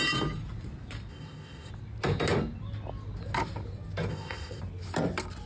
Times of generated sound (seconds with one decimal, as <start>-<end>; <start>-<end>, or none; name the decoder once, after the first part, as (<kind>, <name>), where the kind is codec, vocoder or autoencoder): 1.1-1.7 (codec, ZipCodec); 4.1-4.6